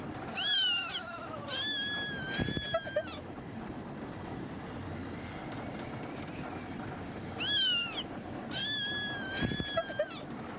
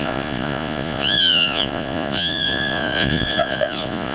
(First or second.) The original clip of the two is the first